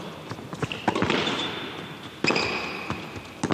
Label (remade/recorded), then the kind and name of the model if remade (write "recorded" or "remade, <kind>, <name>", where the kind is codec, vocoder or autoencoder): recorded